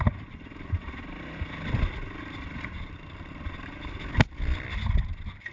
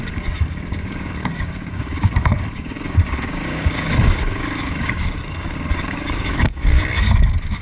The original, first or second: first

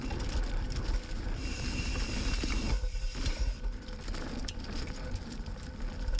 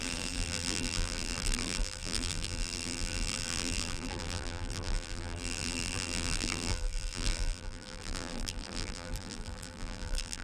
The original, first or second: first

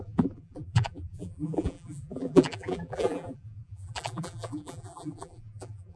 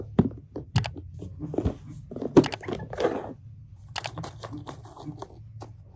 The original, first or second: second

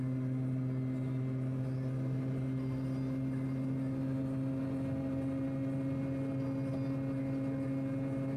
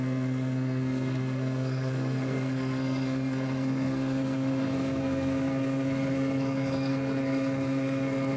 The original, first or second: first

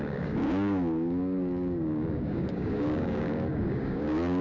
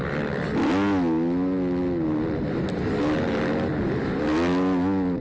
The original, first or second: second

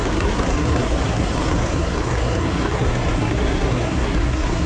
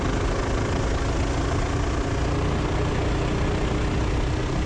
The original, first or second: second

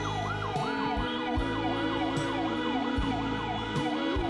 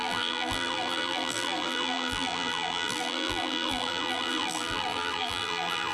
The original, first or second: first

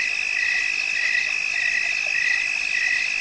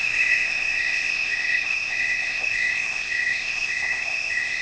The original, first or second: first